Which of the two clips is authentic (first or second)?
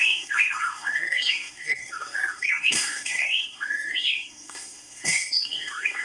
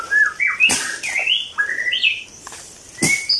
second